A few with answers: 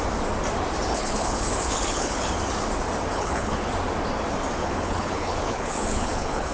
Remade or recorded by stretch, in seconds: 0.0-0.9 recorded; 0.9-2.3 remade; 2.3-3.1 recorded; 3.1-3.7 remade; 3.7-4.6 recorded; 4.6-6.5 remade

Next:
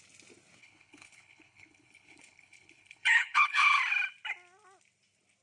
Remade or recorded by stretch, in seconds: 0.0-0.6 recorded; 0.6-3.8 remade; 3.8-5.4 recorded

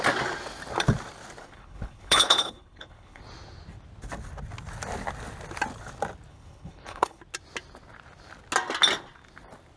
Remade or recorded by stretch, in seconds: 0.0-1.4 recorded; 1.4-3.2 remade; 3.2-6.3 recorded; 6.3-7.2 remade; 7.2-9.8 recorded

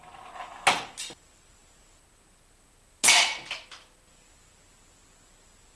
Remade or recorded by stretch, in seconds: 0.0-5.8 recorded

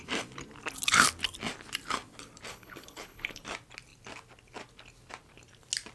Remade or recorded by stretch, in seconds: 0.0-2.5 recorded; 2.5-3.4 remade; 3.4-5.9 recorded

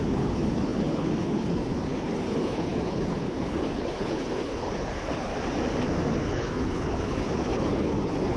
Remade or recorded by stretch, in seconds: 0.0-5.3 remade; 5.3-6.1 recorded; 6.1-8.4 remade

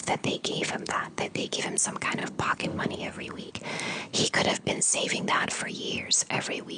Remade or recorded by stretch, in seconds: 0.0-1.6 remade; 1.6-2.2 recorded; 2.2-3.5 remade; 3.5-4.1 recorded; 4.1-5.7 remade; 5.7-6.8 recorded